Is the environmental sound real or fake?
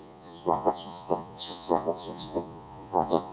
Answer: fake